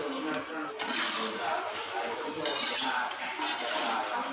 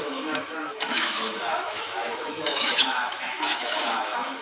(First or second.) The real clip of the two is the first